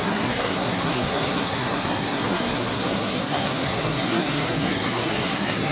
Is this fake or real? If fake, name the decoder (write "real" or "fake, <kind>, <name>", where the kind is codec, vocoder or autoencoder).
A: fake, codec, SNAC